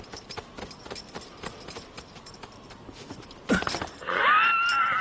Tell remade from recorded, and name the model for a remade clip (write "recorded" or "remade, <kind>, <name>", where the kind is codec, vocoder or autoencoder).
recorded